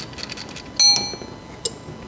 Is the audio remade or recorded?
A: recorded